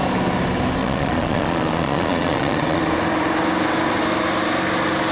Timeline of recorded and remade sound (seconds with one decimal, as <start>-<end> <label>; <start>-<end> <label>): 0.0-0.8 recorded; 0.8-2.8 remade; 2.8-5.1 recorded